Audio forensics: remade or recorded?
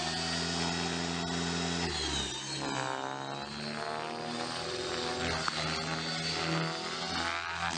recorded